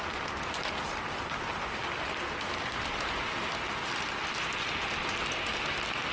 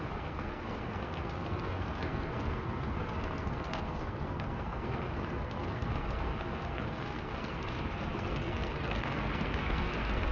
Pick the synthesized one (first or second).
second